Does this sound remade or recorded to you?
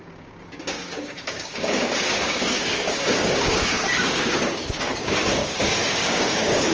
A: remade